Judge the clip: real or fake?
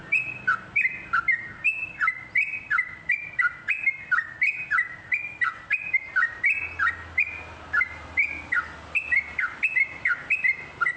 real